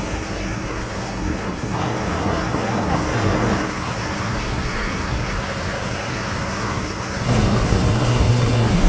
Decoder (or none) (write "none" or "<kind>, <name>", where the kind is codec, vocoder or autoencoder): codec, SNAC